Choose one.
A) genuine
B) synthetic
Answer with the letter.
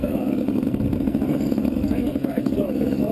B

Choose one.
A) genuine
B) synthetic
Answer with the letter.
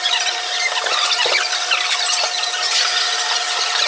A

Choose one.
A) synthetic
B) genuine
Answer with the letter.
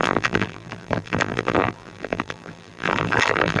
A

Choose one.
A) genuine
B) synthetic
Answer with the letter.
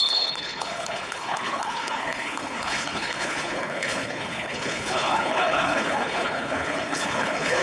B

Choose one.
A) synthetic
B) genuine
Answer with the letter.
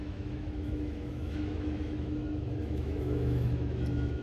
A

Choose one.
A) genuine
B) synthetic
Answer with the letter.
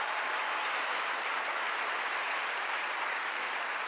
B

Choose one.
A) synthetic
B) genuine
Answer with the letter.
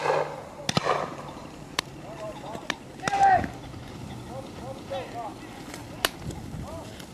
B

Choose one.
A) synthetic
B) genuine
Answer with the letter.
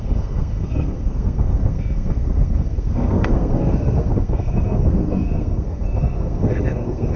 A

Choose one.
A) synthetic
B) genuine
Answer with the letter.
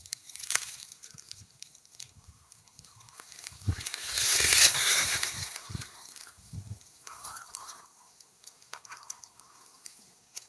A